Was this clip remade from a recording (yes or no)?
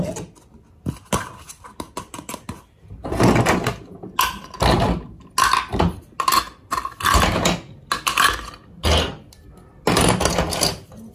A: no